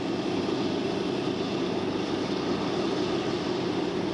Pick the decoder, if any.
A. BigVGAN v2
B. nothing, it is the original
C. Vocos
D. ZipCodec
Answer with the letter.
B